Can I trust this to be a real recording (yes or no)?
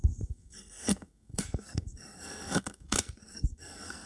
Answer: no